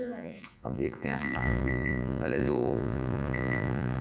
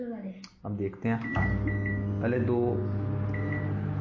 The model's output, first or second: first